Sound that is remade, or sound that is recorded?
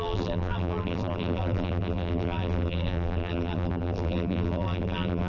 remade